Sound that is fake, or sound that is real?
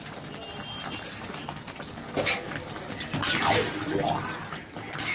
real